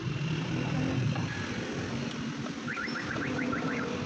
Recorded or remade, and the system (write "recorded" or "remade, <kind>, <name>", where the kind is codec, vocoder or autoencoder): remade, vocoder, BigVGAN v2